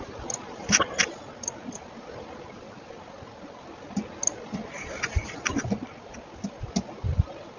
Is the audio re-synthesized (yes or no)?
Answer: no